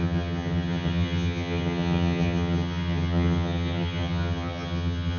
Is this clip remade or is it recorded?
remade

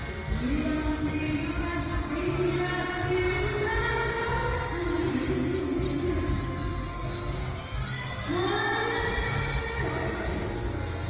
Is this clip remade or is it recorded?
recorded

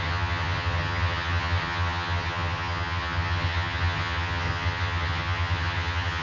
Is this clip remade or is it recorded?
remade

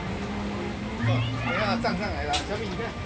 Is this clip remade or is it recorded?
recorded